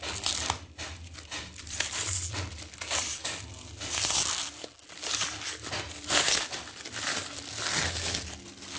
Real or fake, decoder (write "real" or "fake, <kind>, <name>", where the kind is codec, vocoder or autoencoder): real